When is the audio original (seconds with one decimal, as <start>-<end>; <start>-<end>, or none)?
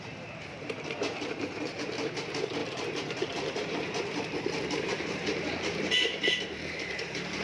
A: none